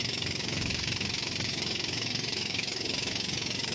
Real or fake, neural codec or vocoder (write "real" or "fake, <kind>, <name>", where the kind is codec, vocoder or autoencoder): fake, codec, DAC